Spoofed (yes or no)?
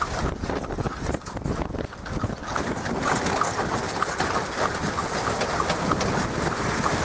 no